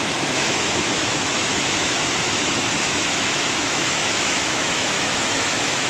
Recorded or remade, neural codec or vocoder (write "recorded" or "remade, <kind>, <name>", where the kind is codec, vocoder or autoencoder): remade, autoencoder, DAC-VAE